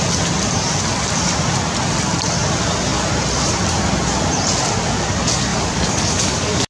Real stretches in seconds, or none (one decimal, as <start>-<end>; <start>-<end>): 0.0-5.5